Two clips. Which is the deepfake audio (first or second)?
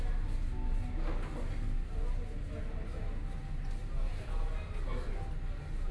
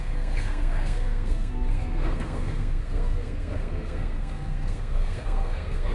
second